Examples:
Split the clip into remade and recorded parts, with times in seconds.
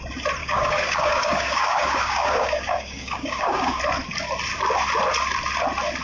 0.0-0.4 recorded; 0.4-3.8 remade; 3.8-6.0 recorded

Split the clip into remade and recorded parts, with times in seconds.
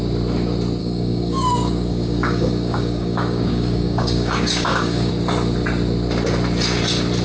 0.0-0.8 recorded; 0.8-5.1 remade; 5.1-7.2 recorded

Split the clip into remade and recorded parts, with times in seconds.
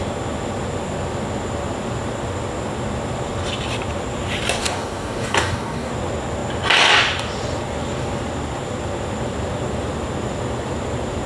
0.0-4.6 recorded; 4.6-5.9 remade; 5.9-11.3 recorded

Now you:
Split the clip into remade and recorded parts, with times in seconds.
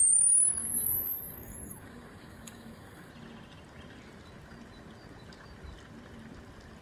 0.0-0.6 recorded; 0.6-3.1 remade; 3.1-6.8 recorded